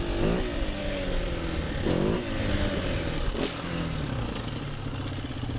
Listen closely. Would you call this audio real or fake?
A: real